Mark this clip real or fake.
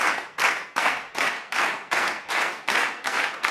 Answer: fake